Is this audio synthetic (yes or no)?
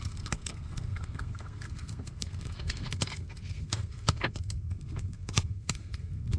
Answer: yes